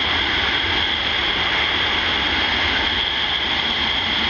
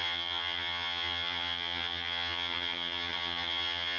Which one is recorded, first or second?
first